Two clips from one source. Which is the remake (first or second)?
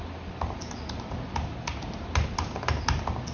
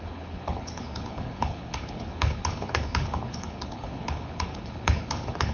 second